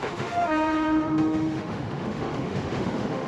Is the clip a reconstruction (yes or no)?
yes